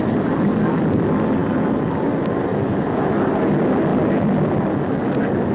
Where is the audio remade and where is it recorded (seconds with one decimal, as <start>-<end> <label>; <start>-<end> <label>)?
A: 0.0-5.5 recorded